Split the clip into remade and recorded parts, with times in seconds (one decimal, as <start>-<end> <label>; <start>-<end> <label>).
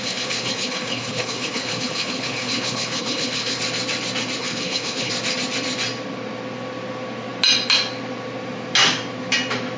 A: 0.0-3.6 remade; 3.6-4.4 recorded; 4.4-5.1 remade; 5.1-9.8 recorded